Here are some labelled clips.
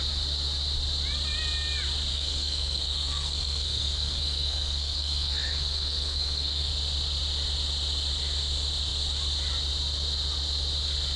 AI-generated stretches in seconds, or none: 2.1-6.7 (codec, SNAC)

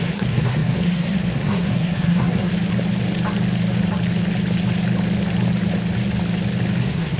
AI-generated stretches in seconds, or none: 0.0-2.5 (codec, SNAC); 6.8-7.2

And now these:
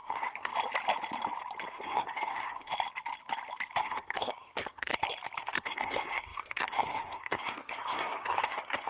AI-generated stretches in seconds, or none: 0.0-0.5 (codec, SNAC); 1.7-2.7; 3.8-4.9; 5.4-8.9

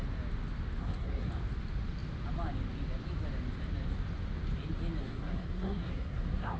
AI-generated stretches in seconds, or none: 0.8-1.3 (codec, SNAC); 5.0-6.6